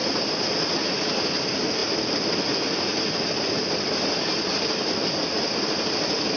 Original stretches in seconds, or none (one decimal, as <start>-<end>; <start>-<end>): 0.0-6.4